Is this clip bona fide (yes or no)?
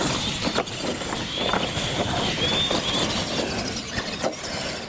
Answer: yes